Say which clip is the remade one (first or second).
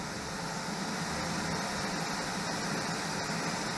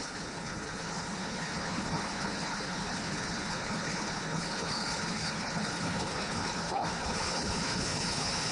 second